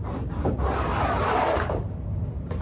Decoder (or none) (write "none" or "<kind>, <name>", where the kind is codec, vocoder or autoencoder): vocoder, BigVGAN v2